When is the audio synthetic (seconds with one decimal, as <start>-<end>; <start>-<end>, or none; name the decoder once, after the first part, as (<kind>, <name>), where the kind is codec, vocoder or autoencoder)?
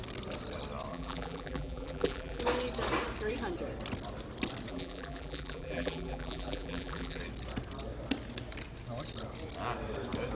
0.9-2.4 (vocoder, BigVGAN v2); 4.7-7.2